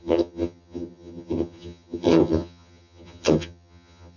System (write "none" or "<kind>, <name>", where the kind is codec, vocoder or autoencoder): vocoder, HiFi-GAN